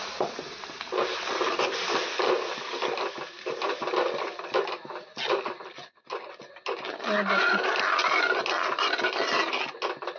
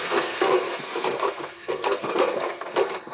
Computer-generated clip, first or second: second